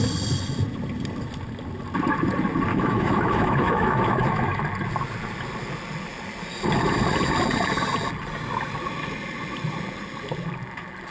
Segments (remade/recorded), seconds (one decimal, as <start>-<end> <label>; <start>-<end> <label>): 0.0-2.7 recorded; 2.7-4.6 remade; 4.6-11.1 recorded